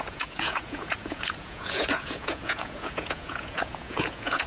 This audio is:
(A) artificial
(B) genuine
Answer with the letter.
A